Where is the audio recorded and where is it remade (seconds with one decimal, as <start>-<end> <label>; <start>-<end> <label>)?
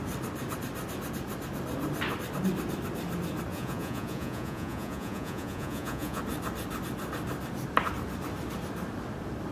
0.0-3.5 recorded; 3.5-6.2 remade; 6.2-9.5 recorded